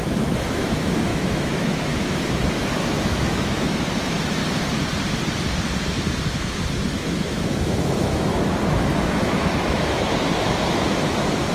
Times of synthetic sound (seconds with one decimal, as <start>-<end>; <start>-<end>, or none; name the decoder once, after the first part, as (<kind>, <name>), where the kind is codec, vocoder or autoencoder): 0.0-4.4 (autoencoder, DAC-VAE); 6.4-11.5